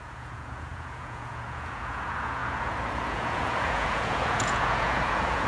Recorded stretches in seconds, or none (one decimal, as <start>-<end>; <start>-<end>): none